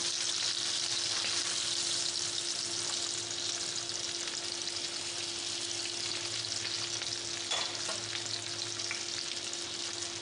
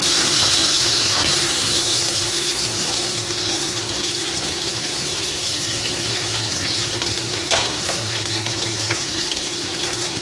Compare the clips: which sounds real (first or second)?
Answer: first